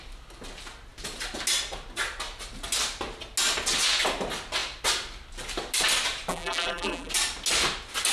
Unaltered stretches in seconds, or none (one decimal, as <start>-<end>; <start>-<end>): 0.0-6.3; 7.1-8.1